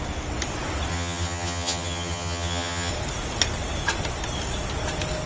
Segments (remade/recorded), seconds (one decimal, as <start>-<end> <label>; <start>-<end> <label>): 0.0-0.9 recorded; 0.9-2.9 remade; 2.9-5.3 recorded